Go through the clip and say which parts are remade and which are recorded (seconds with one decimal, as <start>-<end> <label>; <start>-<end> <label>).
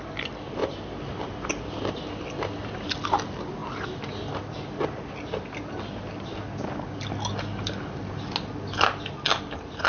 0.0-9.9 recorded